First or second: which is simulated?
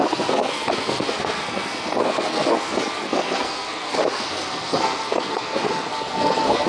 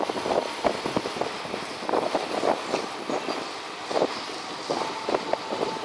first